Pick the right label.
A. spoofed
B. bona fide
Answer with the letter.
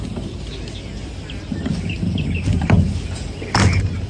B